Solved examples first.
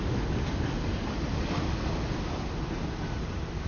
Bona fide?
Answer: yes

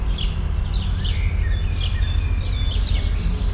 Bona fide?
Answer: yes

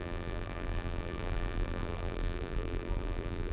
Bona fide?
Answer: no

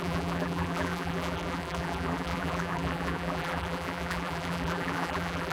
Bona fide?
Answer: no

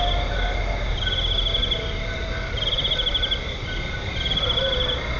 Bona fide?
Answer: yes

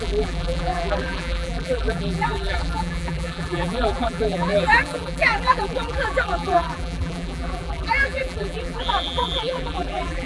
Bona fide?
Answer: no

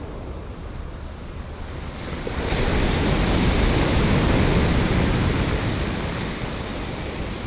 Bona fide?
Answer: yes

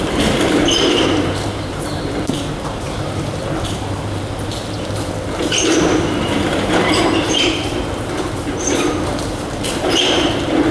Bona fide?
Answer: no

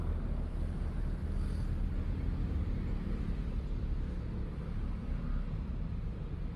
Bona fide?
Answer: yes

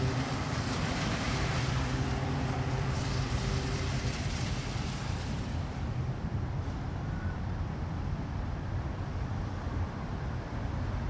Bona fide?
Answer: no